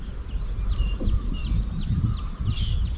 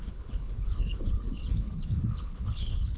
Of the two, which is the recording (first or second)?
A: first